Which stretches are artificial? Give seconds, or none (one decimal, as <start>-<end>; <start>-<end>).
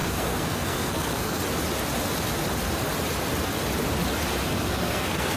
0.0-1.4; 4.6-5.4